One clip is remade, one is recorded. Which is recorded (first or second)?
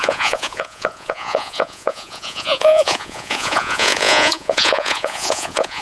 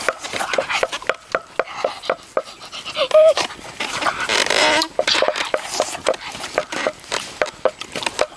second